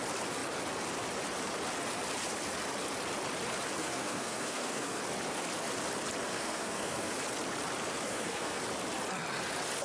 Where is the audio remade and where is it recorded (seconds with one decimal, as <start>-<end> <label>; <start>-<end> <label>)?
0.0-3.8 recorded; 3.8-5.0 remade; 5.0-6.3 recorded; 6.3-7.1 remade; 7.1-8.1 recorded; 8.1-8.6 remade; 8.6-9.8 recorded